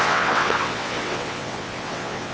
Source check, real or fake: fake